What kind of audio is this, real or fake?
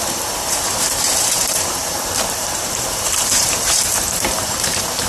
fake